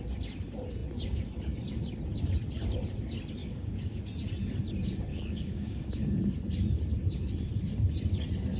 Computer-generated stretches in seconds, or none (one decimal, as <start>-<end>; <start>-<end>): 3.4-4.0; 5.1-6.1